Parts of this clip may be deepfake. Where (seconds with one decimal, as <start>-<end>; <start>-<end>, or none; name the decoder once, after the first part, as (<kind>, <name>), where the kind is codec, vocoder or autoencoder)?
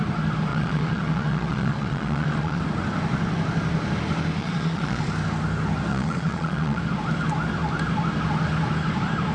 0.5-2.6 (vocoder, Vocos); 4.4-5.0; 5.9-6.8